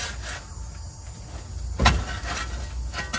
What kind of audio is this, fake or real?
real